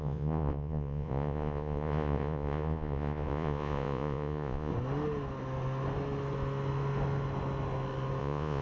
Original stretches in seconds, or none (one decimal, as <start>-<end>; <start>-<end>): 4.7-8.2